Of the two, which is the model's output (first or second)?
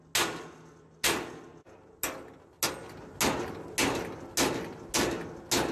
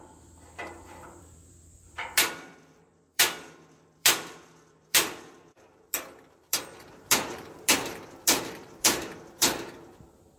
second